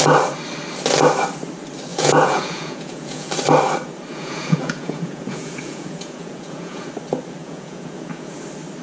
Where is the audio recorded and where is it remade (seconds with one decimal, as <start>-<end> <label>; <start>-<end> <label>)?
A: 0.0-1.9 recorded; 1.9-3.3 remade; 3.3-4.1 recorded; 4.1-6.9 remade; 6.9-7.4 recorded; 7.4-8.4 remade; 8.4-8.8 recorded